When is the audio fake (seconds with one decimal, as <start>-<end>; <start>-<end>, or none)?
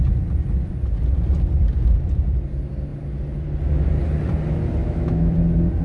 4.8-5.3